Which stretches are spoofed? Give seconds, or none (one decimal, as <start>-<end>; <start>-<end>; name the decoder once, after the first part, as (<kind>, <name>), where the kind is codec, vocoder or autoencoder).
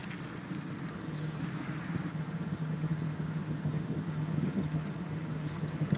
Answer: 0.9-1.4 (vocoder, HiFi-GAN); 2.1-6.0